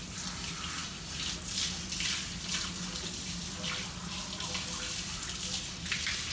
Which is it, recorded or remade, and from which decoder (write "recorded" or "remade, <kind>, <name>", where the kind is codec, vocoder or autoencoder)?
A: recorded